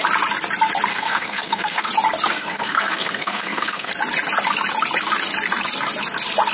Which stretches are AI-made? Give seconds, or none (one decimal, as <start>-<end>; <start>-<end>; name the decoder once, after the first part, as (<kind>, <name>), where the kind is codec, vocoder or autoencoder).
0.9-1.9 (codec, SNAC); 2.3-3.9